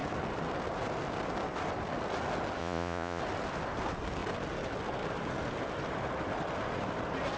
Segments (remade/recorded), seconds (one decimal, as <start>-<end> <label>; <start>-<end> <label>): 0.0-2.6 recorded; 2.6-3.2 remade; 3.2-7.4 recorded